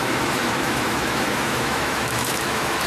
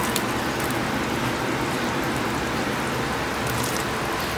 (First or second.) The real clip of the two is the second